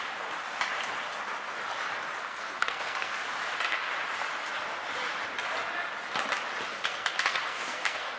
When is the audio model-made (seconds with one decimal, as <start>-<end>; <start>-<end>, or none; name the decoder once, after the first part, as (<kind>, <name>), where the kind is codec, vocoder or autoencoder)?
2.2-3.2 (codec, SNAC); 6.7-8.2